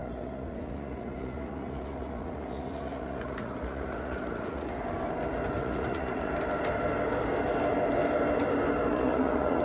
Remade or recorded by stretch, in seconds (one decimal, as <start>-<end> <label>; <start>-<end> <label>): 0.0-4.8 remade; 4.8-5.6 recorded; 5.6-6.3 remade; 6.3-8.9 recorded; 8.9-9.6 remade